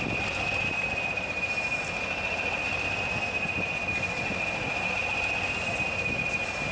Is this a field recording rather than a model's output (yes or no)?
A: yes